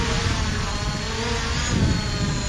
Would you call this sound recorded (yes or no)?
yes